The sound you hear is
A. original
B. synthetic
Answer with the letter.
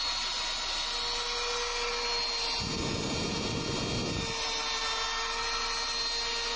A